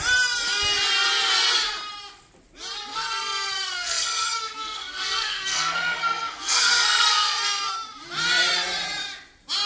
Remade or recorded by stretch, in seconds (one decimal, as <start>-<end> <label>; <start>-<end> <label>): 0.0-2.9 recorded; 2.9-7.7 remade; 7.7-9.7 recorded